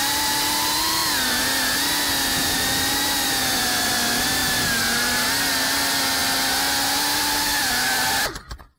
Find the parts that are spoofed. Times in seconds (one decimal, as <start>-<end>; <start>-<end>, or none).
0.0-4.4; 5.5-8.8